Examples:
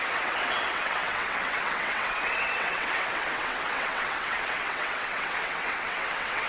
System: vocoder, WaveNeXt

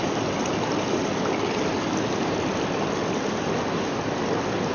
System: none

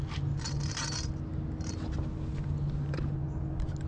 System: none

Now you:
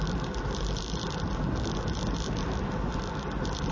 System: none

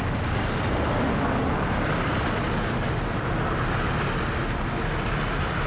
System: none